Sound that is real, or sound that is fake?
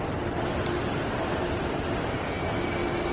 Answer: real